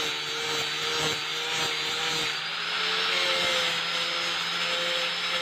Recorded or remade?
recorded